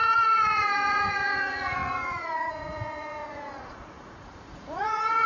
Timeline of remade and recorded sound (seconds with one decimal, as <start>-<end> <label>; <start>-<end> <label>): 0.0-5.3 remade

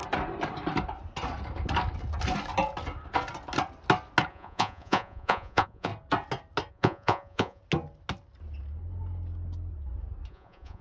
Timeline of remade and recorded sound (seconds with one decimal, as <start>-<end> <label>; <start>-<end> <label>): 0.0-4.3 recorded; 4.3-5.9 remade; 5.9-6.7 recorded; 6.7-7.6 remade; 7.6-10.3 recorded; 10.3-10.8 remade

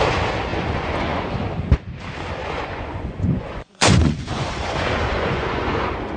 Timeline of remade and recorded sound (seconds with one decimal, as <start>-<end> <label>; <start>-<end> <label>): 0.0-0.5 recorded; 0.5-1.3 remade; 1.3-2.4 recorded; 2.4-6.2 remade

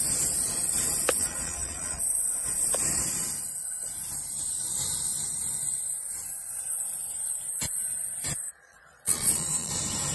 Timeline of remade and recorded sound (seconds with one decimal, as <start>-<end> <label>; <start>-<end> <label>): 0.0-1.2 recorded; 1.2-2.0 remade; 2.0-8.5 recorded; 8.5-9.7 remade; 9.7-10.1 recorded

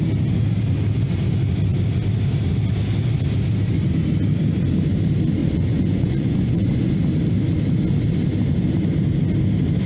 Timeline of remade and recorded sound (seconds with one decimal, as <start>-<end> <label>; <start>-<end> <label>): 0.0-5.4 recorded; 5.4-6.9 remade; 6.9-9.9 recorded